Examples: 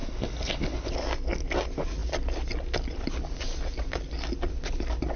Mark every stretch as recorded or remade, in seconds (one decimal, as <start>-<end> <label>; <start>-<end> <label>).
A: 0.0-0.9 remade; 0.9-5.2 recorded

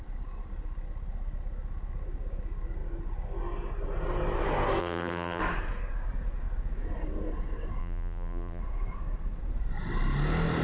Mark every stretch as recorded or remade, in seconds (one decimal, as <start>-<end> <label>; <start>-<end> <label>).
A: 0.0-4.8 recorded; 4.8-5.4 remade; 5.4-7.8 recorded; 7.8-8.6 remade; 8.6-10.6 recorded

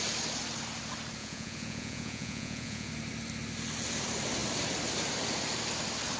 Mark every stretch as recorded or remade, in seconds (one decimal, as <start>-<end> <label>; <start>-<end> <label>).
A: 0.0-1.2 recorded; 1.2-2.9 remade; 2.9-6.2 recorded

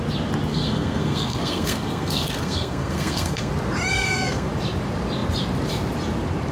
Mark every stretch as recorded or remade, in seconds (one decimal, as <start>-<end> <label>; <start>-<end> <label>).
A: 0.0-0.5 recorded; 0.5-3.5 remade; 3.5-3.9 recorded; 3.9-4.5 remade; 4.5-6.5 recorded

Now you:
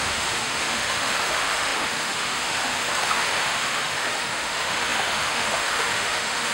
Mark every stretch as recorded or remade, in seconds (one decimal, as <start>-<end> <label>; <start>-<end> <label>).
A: 0.0-6.5 remade

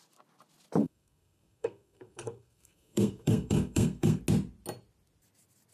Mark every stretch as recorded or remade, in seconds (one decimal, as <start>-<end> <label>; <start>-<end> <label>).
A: 0.0-0.8 recorded; 0.8-4.2 remade; 4.2-5.7 recorded

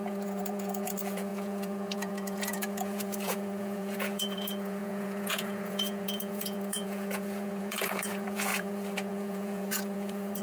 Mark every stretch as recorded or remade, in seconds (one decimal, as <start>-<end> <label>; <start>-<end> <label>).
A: 0.0-10.4 remade